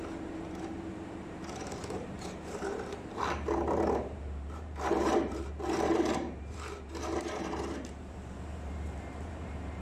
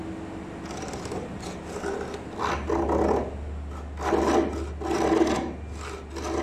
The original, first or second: second